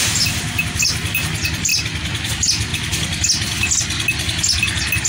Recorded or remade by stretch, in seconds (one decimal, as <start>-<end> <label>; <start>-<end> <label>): 0.0-5.1 recorded